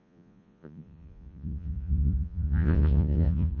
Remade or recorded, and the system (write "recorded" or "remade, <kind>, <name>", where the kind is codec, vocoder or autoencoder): remade, vocoder, Vocos